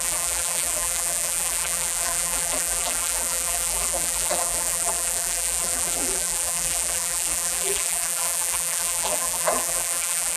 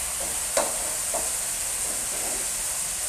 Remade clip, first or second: first